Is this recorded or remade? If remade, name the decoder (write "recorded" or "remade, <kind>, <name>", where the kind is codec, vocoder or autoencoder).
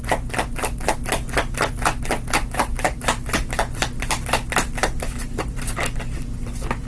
recorded